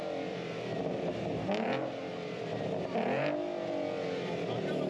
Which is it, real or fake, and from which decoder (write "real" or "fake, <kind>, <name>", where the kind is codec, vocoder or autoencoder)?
real